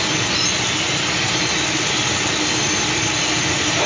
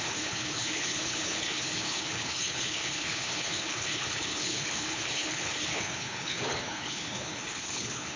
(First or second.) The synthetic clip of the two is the second